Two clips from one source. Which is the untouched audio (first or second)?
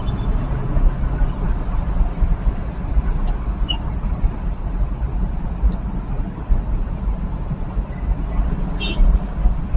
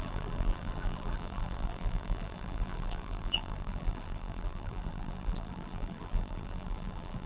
first